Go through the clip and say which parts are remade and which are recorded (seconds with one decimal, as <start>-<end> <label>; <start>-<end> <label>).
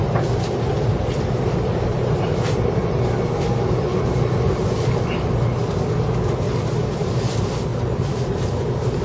0.0-2.8 remade; 2.8-3.9 recorded; 3.9-5.0 remade; 5.0-7.7 recorded; 7.7-9.0 remade